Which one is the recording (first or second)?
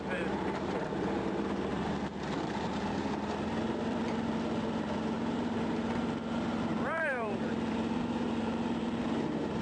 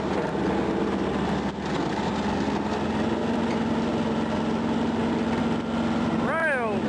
second